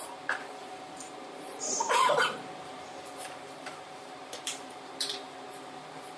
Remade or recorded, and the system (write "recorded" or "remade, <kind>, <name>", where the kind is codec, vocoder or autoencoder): remade, vocoder, BigVGAN v2